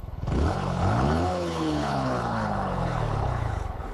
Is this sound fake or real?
fake